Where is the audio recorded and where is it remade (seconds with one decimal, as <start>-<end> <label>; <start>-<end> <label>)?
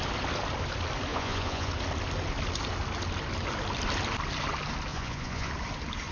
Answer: 0.0-1.1 recorded; 1.1-1.7 remade; 1.7-4.9 recorded; 4.9-5.5 remade; 5.5-6.1 recorded